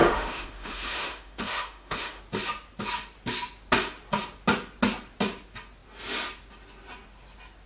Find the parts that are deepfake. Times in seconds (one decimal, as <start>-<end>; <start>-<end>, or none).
0.0-2.2